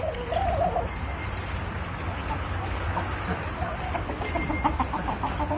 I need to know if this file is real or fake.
real